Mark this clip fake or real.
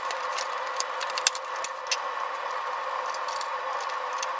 real